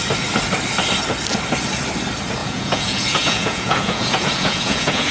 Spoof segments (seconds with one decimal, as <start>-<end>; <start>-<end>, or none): 2.4-5.1